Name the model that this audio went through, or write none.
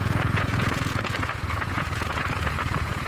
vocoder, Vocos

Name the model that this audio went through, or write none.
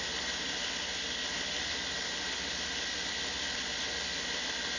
none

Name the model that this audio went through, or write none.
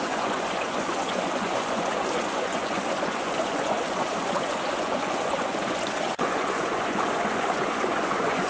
vocoder, Vocos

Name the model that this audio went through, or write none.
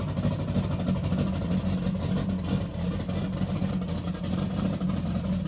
none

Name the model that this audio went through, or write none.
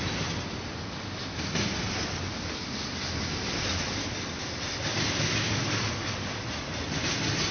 none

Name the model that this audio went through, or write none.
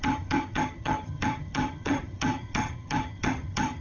vocoder, HiFi-GAN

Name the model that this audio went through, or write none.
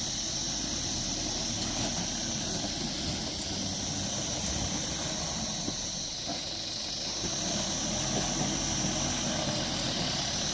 none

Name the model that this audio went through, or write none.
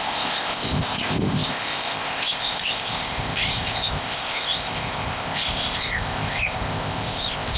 codec, ZipCodec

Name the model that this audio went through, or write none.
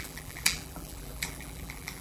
vocoder, BigVGAN v2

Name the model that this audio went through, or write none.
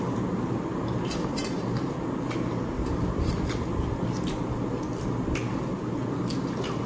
none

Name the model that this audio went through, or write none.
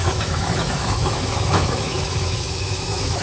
autoencoder, DAC-VAE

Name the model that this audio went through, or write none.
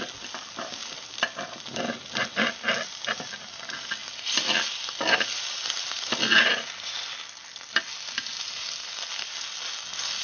none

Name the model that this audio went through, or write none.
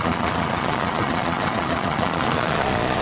vocoder, Vocos